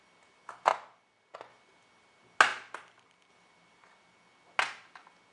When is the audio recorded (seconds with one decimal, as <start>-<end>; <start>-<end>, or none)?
0.0-2.5; 3.3-5.3